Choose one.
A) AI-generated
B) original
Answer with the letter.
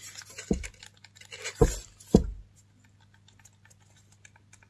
B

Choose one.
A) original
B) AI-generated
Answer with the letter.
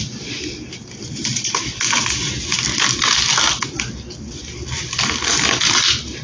A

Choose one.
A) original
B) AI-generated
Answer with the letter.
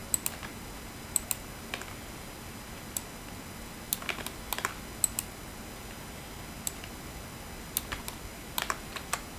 A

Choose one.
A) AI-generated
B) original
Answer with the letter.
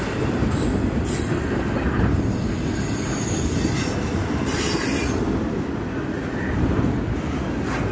B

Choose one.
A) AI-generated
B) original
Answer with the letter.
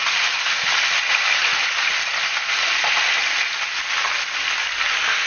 B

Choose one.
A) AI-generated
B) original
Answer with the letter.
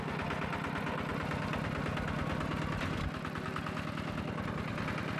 B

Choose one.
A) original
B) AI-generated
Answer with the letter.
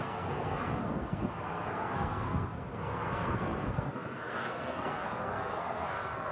B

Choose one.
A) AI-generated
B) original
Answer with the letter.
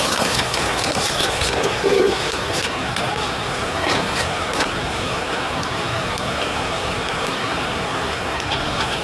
A